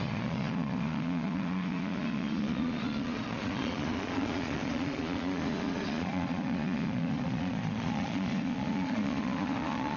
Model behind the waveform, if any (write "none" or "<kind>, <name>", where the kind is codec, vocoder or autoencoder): vocoder, Vocos